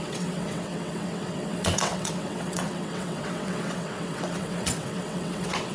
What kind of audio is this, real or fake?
fake